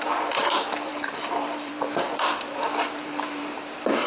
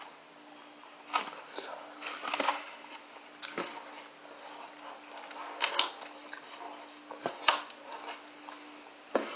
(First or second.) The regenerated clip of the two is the first